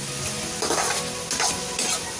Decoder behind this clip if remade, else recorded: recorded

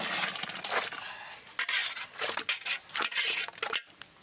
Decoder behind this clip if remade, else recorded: recorded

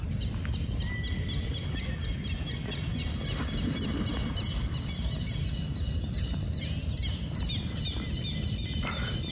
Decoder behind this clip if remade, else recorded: recorded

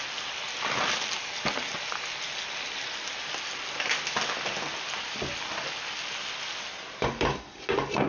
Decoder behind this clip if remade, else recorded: recorded